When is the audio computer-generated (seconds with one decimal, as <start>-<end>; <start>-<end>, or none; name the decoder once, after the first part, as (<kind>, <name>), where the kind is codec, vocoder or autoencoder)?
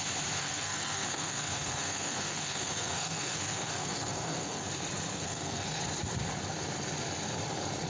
0.4-4.6 (codec, SNAC); 5.1-5.8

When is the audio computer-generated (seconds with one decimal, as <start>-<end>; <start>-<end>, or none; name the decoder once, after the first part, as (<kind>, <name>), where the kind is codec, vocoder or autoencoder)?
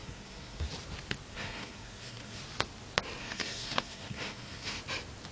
0.0-0.7 (codec, SNAC); 1.3-2.4; 3.2-4.8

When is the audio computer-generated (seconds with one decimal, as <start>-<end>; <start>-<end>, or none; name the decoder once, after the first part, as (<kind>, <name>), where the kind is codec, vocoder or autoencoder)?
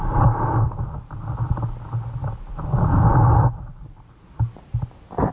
none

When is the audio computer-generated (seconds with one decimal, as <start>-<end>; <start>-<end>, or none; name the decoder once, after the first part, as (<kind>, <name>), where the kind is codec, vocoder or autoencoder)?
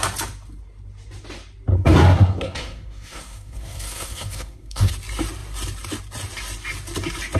1.7-4.9 (codec, SNAC)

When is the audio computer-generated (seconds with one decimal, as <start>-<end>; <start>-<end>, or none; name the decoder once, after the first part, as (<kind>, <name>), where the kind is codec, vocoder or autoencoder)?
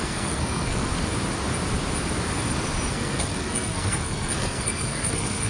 0.0-0.9 (codec, SNAC); 2.9-5.5